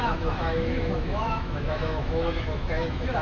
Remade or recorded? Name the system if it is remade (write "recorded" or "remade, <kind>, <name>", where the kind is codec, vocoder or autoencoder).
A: remade, autoencoder, DAC-VAE